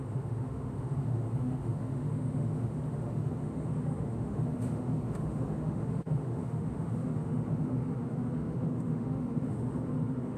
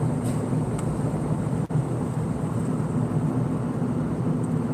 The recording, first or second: second